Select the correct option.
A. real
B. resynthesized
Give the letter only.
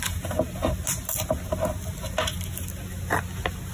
A